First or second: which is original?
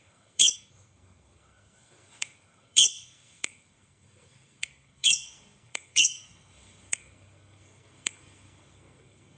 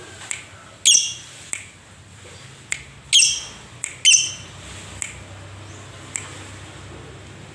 second